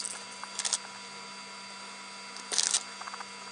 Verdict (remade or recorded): recorded